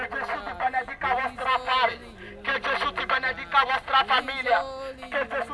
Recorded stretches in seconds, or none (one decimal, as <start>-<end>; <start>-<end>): 0.0-5.5